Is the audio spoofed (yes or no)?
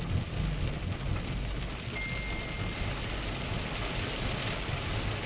no